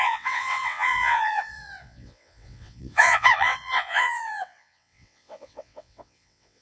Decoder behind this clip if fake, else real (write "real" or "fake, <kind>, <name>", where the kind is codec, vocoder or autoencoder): fake, vocoder, WaveNeXt